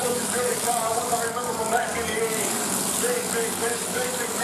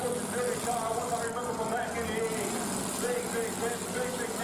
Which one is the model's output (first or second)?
first